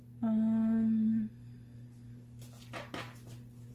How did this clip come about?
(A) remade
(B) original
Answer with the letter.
B